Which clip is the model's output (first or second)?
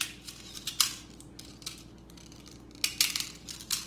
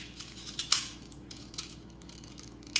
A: second